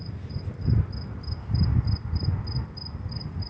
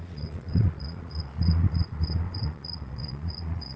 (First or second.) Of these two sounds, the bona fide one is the first